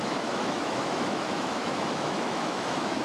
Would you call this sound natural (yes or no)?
no